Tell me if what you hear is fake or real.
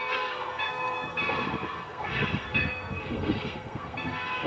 fake